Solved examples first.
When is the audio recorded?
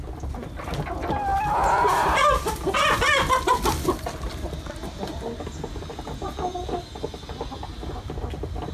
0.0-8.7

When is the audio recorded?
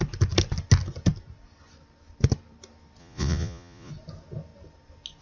0.0-3.0; 3.9-5.2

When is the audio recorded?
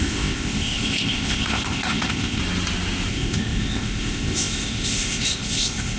2.4-3.1